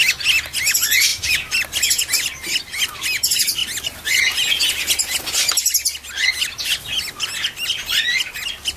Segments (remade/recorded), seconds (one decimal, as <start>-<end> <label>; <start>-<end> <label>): 0.0-8.8 recorded